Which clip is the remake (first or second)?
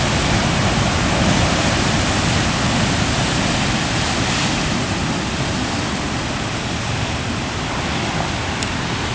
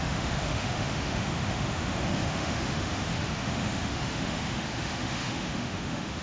second